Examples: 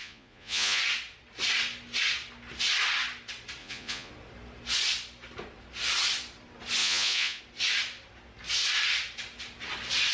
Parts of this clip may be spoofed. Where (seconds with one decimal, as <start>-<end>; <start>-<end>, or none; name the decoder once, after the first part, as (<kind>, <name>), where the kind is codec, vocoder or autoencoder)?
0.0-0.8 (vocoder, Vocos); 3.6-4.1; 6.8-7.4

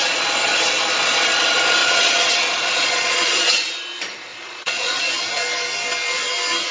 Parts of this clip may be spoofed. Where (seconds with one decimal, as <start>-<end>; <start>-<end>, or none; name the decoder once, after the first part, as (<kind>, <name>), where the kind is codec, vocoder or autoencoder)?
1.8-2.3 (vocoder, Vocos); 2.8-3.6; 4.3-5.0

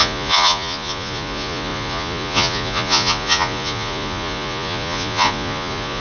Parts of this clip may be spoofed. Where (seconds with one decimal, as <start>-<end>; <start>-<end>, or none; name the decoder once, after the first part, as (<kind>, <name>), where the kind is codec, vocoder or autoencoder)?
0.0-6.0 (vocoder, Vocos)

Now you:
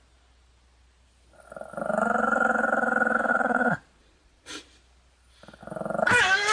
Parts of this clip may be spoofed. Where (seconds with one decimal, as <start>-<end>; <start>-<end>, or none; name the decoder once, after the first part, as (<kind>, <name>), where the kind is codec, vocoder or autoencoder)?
3.3-4.5 (vocoder, Vocos)

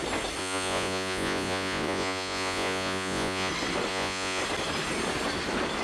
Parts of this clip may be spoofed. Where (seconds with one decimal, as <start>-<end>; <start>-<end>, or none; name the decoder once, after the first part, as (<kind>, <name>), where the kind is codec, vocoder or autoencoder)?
0.4-3.5 (vocoder, Vocos); 3.9-4.4

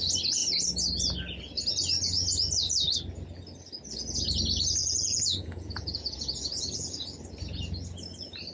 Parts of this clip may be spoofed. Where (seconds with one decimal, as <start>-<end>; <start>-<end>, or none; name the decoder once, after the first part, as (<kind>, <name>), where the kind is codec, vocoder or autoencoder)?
4.8-7.2 (vocoder, Vocos)

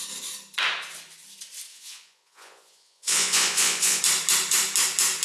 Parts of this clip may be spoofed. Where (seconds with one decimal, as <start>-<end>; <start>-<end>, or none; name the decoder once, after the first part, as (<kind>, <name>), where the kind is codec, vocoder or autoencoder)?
1.7-4.0 (vocoder, Vocos)

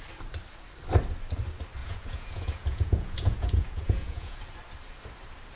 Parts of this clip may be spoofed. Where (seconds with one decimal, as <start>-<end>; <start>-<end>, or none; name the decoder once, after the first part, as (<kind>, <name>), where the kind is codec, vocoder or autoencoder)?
1.8-4.4 (vocoder, Vocos)